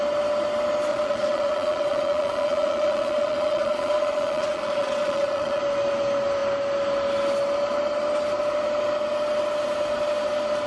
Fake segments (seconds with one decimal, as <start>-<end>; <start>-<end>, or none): 0.9-5.6